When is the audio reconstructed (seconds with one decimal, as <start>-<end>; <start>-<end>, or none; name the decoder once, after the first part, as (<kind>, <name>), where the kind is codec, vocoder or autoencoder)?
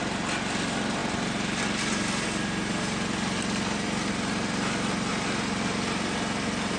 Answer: none